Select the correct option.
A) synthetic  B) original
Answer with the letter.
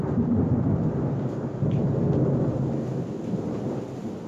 B